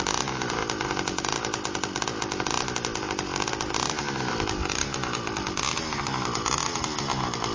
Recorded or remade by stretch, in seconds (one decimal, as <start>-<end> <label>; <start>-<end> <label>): 0.0-7.5 recorded